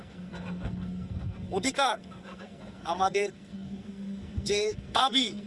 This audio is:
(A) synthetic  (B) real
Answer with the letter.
A